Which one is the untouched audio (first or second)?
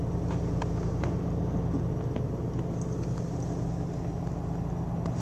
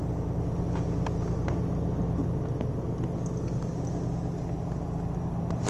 second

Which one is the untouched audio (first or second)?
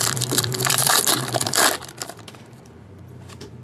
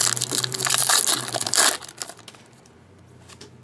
second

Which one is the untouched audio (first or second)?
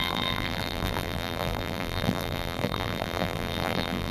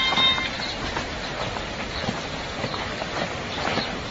second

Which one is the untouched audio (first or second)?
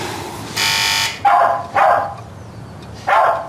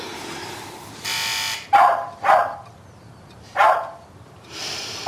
first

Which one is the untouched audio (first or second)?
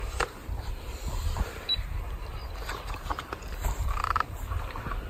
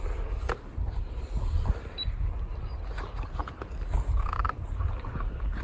second